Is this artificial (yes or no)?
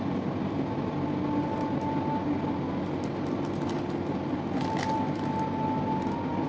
no